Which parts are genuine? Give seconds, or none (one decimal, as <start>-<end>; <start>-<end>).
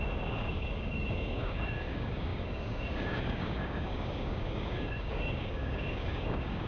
none